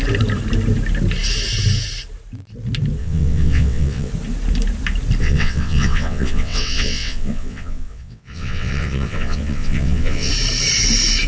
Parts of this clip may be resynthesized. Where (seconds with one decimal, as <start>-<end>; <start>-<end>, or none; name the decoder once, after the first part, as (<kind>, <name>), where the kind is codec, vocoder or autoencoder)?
3.0-4.1 (vocoder, WaveNeXt); 5.2-10.3